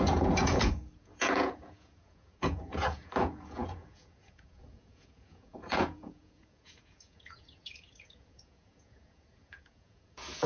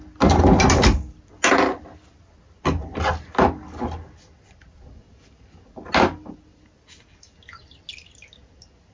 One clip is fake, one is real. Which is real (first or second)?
second